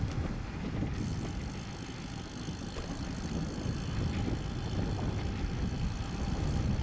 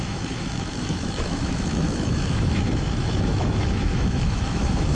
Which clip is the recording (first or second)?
first